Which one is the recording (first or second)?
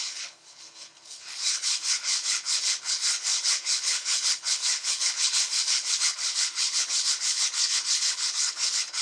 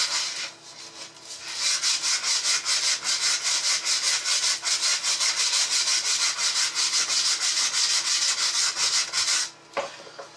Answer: second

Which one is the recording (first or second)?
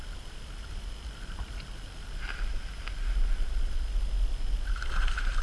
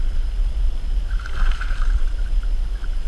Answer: first